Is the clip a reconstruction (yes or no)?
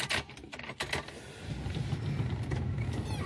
no